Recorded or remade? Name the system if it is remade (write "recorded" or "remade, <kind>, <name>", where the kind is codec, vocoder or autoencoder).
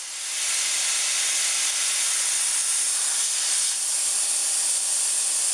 recorded